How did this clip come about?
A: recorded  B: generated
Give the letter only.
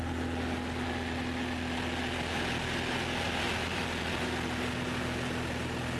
A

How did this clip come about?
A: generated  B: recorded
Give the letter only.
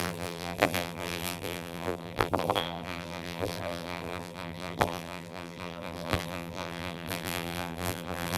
A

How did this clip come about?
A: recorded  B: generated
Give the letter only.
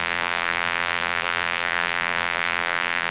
B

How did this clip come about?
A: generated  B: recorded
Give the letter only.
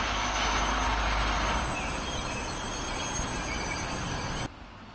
B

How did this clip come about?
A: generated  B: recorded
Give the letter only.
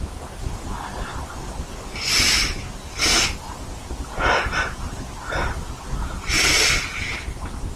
A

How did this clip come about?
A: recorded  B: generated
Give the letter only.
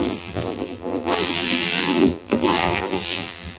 B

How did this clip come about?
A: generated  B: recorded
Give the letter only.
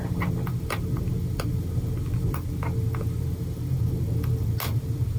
B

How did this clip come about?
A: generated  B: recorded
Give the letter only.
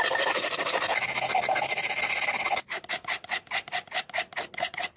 B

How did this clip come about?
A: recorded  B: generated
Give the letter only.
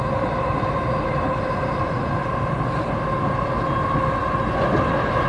A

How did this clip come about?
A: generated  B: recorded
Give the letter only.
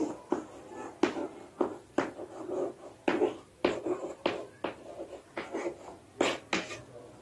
B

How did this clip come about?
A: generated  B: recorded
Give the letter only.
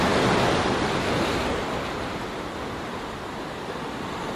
B